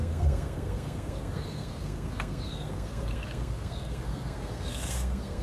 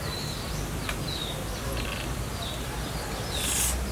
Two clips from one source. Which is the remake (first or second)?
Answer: first